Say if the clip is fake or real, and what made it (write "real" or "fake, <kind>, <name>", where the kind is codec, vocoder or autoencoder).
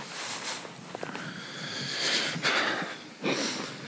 real